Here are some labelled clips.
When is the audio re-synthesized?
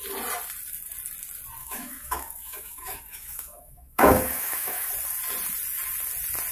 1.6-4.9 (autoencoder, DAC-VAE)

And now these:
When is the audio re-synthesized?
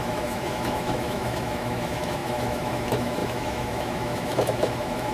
0.0-5.1 (autoencoder, DAC-VAE)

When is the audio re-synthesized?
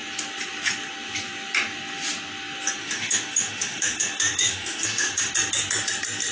2.8-5.3 (autoencoder, DAC-VAE)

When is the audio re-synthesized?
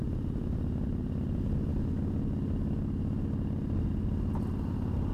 none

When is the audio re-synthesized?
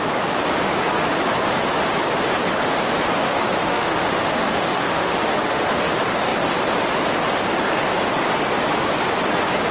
3.2-5.6 (autoencoder, DAC-VAE)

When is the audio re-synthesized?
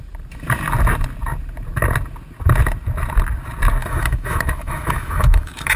3.8-5.8 (autoencoder, DAC-VAE)